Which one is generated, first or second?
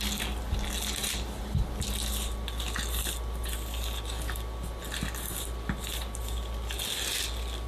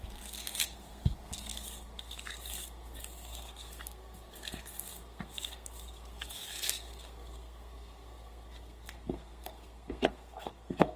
second